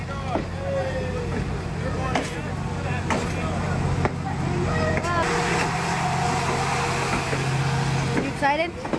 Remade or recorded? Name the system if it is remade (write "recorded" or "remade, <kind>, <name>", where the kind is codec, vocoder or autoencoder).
recorded